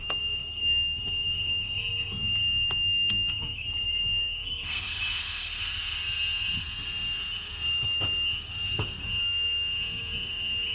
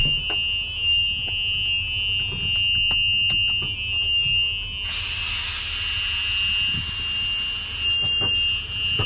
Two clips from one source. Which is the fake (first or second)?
first